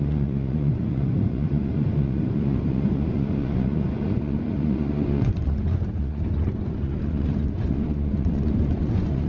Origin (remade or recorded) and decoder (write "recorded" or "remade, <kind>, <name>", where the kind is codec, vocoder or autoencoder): remade, vocoder, Vocos